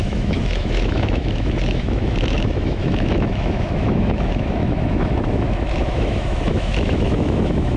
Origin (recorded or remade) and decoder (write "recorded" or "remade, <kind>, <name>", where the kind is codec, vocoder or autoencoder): remade, autoencoder, DAC-VAE